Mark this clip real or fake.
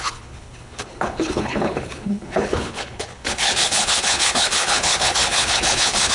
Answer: fake